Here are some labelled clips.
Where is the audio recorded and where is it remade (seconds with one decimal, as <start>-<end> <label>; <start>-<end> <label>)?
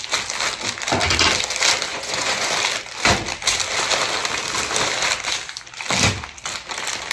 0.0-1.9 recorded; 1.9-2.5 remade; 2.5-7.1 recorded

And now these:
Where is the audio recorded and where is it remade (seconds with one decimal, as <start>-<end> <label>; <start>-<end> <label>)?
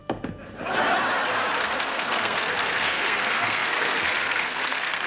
0.0-1.6 recorded; 1.6-5.1 remade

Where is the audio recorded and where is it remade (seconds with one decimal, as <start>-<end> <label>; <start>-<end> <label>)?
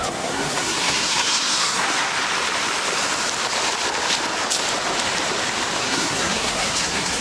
0.0-2.1 remade; 2.1-5.8 recorded; 5.8-7.2 remade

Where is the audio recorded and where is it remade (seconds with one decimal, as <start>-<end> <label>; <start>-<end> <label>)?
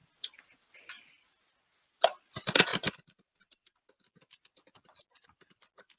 0.0-2.7 recorded; 2.7-3.9 remade; 3.9-6.0 recorded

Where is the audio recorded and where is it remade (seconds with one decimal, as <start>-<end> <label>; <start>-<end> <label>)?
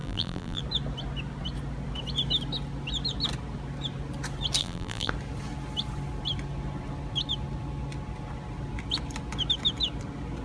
0.0-0.6 remade; 0.6-4.6 recorded; 4.6-5.1 remade; 5.1-10.4 recorded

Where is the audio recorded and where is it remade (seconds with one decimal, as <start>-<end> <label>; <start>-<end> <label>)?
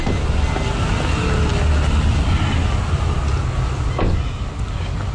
0.0-5.1 recorded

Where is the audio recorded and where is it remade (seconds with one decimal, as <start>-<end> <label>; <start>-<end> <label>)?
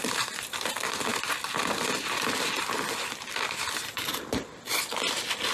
0.0-5.5 recorded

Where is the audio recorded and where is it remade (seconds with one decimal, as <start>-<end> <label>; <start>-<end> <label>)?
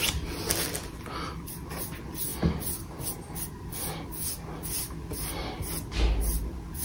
0.0-6.8 recorded